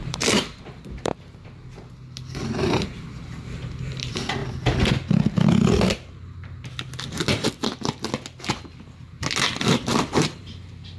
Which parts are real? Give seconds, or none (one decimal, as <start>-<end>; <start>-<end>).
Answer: 1.1-2.6; 4.4-9.6